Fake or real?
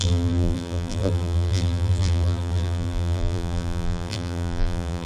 fake